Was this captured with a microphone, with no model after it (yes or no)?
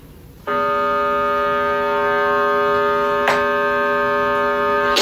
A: yes